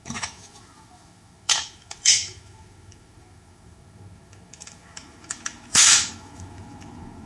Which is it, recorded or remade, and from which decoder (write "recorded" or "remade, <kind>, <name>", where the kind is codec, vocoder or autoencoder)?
remade, autoencoder, DAC-VAE